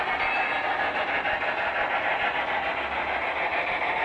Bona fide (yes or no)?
yes